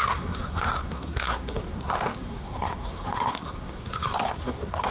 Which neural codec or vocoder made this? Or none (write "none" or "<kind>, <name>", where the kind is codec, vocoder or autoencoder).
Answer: codec, SNAC